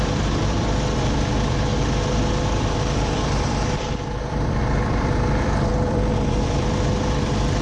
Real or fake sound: fake